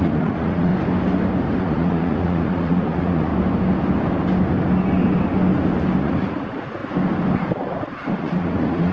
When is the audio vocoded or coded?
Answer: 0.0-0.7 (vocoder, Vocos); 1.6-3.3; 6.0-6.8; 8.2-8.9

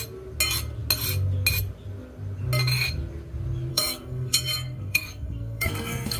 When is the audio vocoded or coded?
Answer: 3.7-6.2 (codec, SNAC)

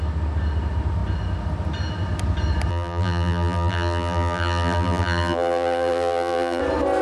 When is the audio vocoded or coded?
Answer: 2.7-6.6 (vocoder, BigVGAN v2)

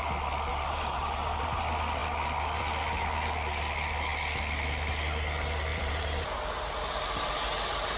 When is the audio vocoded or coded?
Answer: 0.5-1.6 (vocoder, BigVGAN v2); 5.7-6.4

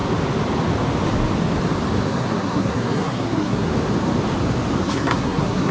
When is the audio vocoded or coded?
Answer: 2.0-3.7 (codec, SNAC); 4.8-5.7

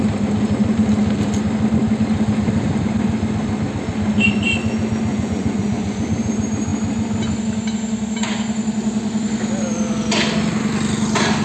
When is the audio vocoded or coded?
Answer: 5.1-6.1 (vocoder, Vocos)

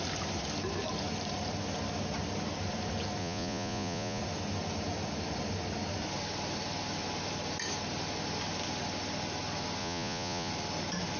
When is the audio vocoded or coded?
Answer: 3.2-4.2 (vocoder, Vocos); 9.8-10.5